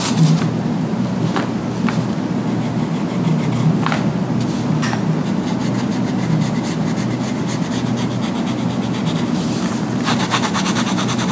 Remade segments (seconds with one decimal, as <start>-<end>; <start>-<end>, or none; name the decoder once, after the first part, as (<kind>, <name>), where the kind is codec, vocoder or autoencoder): none